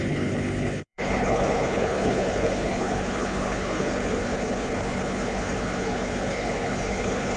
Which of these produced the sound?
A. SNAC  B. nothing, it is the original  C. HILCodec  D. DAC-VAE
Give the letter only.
C